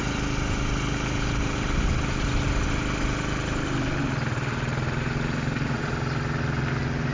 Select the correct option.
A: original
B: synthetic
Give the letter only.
A